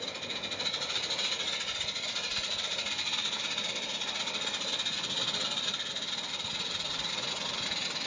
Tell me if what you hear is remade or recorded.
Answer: recorded